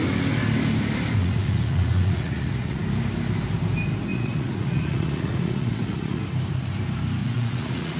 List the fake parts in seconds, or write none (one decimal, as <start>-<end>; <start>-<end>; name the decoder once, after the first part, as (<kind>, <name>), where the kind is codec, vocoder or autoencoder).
1.2-2.8 (vocoder, Vocos); 4.1-6.2; 7.2-8.0